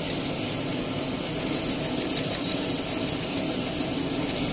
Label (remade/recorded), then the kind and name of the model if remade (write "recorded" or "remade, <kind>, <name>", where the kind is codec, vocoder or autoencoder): recorded